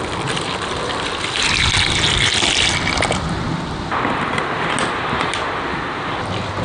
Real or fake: real